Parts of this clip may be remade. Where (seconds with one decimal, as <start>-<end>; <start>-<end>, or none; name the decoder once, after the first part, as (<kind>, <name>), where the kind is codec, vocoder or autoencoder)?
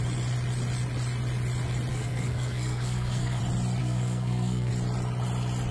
1.9-3.4 (codec, SNAC); 3.8-4.7